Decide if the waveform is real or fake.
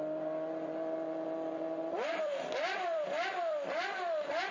fake